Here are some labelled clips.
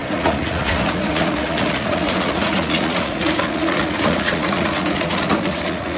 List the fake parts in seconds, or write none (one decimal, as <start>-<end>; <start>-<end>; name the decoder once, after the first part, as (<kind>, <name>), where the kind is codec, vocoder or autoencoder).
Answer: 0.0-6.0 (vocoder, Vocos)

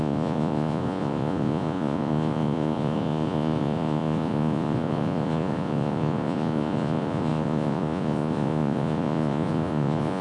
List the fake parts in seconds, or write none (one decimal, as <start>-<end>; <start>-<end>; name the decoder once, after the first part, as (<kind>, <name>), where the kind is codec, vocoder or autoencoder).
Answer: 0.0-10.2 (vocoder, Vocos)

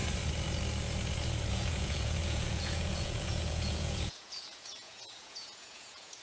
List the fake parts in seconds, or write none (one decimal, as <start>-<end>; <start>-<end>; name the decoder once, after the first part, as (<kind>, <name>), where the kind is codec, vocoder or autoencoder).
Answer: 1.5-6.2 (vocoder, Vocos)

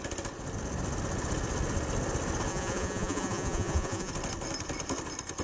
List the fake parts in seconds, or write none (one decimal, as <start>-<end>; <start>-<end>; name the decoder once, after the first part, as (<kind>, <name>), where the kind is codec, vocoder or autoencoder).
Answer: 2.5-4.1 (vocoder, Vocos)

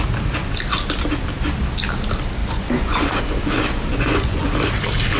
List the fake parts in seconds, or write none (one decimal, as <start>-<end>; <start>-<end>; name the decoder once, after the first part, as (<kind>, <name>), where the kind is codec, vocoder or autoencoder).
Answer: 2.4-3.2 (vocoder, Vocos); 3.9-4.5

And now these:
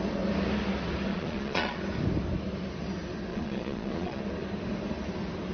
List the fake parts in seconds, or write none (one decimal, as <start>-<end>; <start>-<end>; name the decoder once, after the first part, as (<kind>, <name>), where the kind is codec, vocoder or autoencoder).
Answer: 1.1-1.8 (vocoder, Vocos); 3.3-4.2

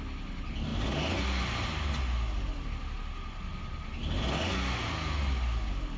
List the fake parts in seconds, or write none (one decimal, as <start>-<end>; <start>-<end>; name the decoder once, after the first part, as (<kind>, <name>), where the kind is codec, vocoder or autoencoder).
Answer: none

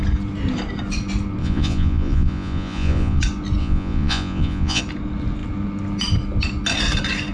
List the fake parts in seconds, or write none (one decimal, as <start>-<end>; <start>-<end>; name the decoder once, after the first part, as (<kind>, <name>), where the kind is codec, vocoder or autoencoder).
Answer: 1.4-3.2 (vocoder, Vocos); 3.6-4.8